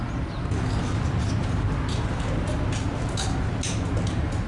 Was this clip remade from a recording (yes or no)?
no